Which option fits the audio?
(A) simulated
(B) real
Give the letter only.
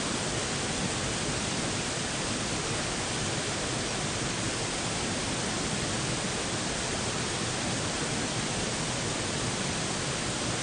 B